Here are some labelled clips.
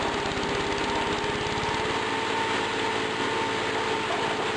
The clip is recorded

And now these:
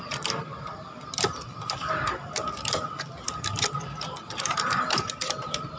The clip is recorded